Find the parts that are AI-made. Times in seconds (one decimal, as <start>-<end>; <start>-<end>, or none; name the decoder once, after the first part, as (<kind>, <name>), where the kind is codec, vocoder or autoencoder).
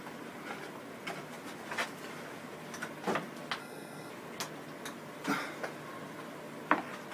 3.6-4.1 (codec, SNAC)